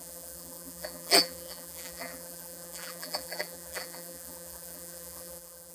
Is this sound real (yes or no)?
no